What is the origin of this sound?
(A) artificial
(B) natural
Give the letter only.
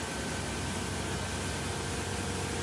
B